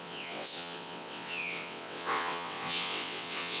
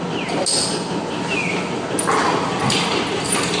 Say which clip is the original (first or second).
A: second